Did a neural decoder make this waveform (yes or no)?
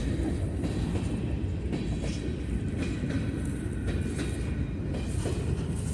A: no